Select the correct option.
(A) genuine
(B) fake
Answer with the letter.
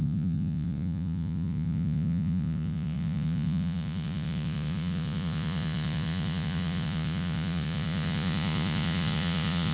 B